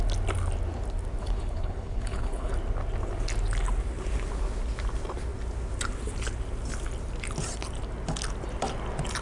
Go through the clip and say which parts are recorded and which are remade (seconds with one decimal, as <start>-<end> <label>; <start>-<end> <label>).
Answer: 0.0-1.2 recorded; 1.2-2.5 remade; 2.5-9.2 recorded